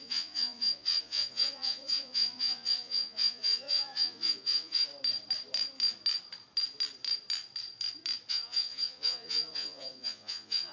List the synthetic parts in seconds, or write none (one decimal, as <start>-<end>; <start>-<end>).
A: 0.0-4.9; 8.3-10.7